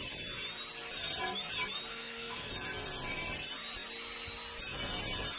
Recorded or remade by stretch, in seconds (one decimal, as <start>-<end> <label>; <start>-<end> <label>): 0.0-1.9 recorded; 1.9-2.5 remade; 2.5-5.4 recorded